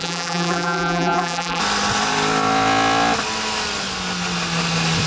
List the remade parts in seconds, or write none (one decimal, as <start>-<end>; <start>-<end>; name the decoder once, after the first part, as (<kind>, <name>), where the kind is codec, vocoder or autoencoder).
0.0-1.6 (vocoder, BigVGAN v2)